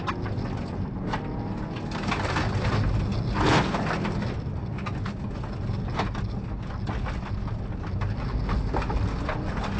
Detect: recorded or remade recorded